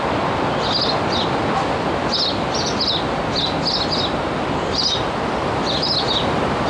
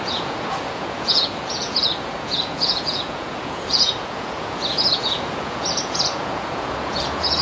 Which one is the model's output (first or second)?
second